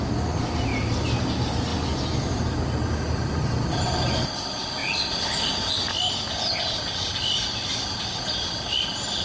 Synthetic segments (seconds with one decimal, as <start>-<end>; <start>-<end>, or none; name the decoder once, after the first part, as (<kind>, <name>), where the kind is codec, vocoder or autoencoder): none